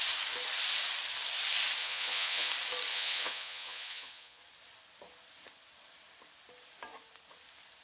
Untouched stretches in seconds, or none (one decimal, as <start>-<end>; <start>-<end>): 0.0-1.8; 2.5-2.9; 4.4-7.8